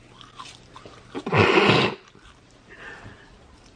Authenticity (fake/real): real